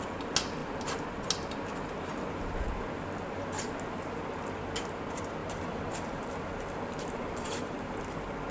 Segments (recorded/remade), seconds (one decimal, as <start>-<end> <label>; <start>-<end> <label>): 0.0-5.4 recorded; 5.4-8.0 remade; 8.0-8.5 recorded